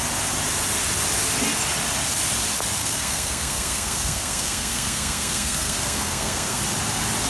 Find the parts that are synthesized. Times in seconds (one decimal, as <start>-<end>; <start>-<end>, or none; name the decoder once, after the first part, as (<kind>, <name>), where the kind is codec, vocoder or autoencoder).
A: 2.8-6.6 (codec, SNAC)